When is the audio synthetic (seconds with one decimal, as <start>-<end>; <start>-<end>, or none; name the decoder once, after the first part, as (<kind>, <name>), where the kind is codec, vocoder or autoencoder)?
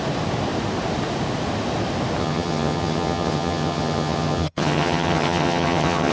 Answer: 2.2-6.1 (vocoder, HiFi-GAN)